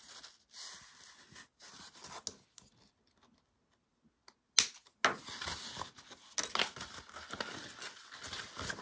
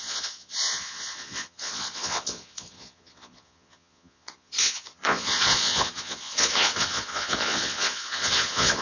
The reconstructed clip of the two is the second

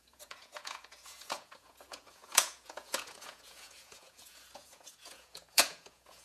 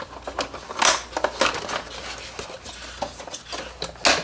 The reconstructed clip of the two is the first